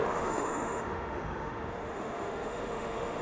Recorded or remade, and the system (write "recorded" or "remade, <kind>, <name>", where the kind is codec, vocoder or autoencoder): remade, autoencoder, DAC-VAE